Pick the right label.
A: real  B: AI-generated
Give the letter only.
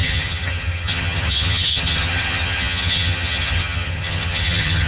B